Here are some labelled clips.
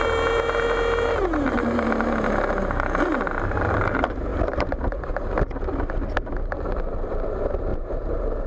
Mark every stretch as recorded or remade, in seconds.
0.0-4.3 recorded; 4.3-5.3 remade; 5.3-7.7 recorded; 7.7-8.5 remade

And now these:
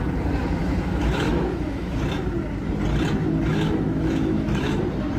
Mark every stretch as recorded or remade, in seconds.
0.0-0.6 recorded; 0.6-2.0 remade; 2.0-3.5 recorded; 3.5-4.8 remade; 4.8-5.2 recorded

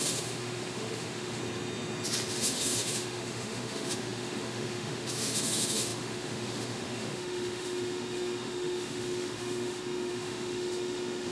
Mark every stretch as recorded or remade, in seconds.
0.0-1.4 remade; 1.4-2.3 recorded; 2.3-11.3 remade

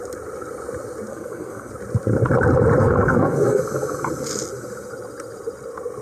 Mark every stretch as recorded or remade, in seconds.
0.0-1.1 recorded; 1.1-1.7 remade; 1.7-2.8 recorded; 2.8-3.6 remade; 3.6-6.0 recorded

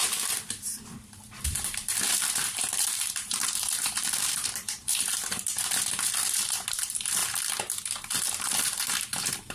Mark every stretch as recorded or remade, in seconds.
0.0-7.2 remade; 7.2-8.3 recorded; 8.3-9.5 remade

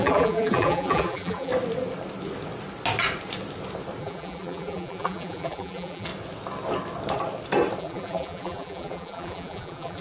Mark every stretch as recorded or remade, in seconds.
0.0-1.5 remade; 1.5-4.0 recorded; 4.0-6.1 remade; 6.1-7.8 recorded; 7.8-10.0 remade

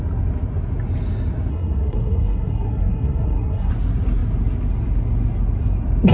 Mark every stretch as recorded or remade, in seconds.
0.0-1.5 recorded; 1.5-3.7 remade; 3.7-6.1 recorded